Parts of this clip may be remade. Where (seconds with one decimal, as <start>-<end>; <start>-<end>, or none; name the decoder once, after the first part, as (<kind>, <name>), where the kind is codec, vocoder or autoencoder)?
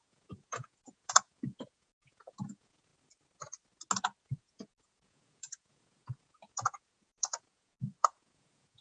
0.0-2.9 (vocoder, Vocos); 4.2-8.8